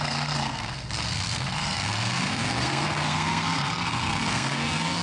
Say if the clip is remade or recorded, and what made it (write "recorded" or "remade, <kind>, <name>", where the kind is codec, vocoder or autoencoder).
remade, codec, SNAC